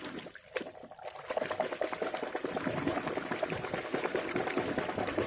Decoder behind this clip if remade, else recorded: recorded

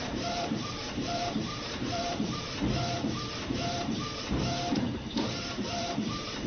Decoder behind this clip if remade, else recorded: remade, vocoder, BigVGAN v2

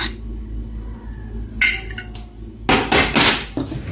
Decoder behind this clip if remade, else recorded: recorded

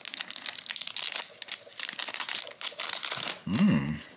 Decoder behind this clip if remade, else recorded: recorded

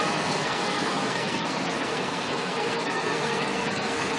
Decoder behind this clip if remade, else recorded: remade, codec, SNAC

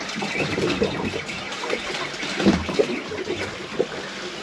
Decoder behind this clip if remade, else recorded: recorded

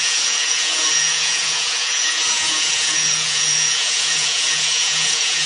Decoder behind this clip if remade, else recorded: remade, vocoder, Vocos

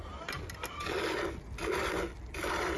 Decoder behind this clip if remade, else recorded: recorded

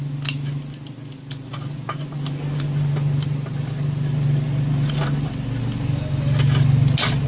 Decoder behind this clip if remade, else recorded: recorded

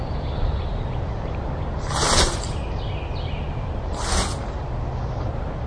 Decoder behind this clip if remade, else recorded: recorded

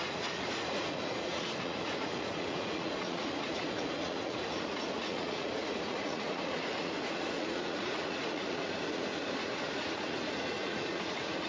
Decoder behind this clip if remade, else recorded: remade, vocoder, Vocos